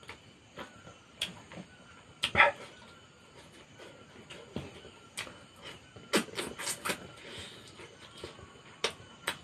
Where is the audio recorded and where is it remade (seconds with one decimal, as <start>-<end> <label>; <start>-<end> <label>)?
0.0-9.4 recorded